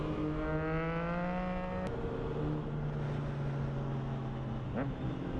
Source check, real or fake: real